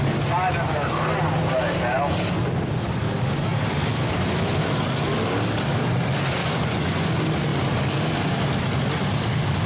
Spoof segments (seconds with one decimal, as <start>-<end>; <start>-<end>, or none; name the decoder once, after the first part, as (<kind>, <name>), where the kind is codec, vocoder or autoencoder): 6.4-7.1 (vocoder, Vocos)